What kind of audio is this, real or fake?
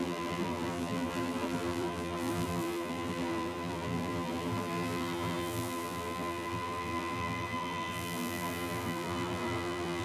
fake